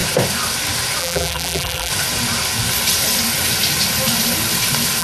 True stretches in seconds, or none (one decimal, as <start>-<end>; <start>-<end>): 0.0-1.0; 1.9-5.0

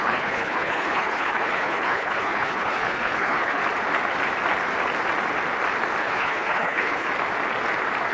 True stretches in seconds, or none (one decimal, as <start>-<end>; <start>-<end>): 3.6-6.0; 7.1-8.1

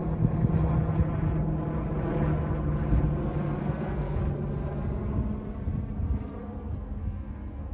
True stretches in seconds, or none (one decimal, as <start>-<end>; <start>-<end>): 0.0-3.6; 4.2-6.4

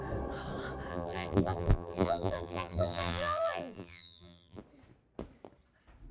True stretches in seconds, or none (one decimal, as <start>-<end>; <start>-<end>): 0.0-0.9; 4.6-6.1

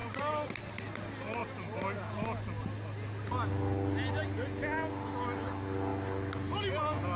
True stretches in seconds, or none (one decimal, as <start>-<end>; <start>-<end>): 0.0-7.2

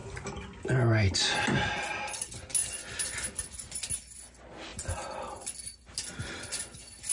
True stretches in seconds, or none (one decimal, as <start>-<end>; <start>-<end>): 0.0-7.1

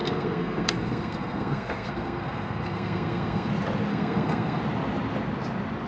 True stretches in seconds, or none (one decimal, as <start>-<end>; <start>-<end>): 3.5-3.9; 4.6-5.9

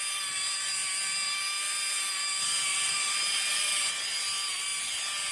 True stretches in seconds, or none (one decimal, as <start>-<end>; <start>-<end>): 0.0-5.3